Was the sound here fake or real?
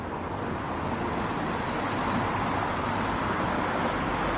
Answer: real